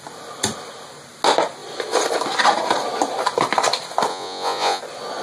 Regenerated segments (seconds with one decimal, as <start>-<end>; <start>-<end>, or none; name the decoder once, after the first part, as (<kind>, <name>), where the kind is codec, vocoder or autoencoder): 4.1-4.8 (vocoder, Vocos)